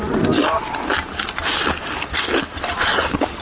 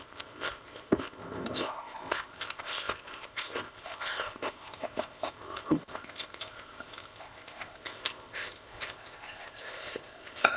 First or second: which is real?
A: first